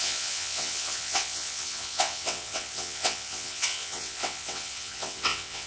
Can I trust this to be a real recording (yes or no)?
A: no